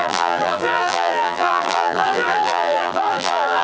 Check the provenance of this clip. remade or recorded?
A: remade